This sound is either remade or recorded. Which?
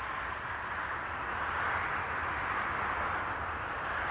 recorded